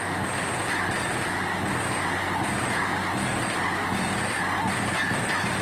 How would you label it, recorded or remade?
recorded